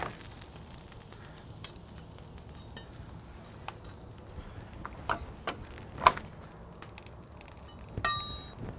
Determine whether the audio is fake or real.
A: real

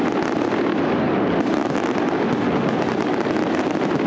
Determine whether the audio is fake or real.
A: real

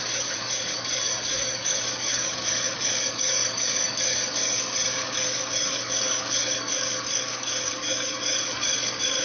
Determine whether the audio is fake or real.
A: fake